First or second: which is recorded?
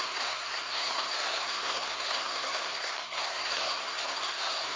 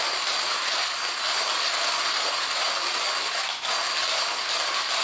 second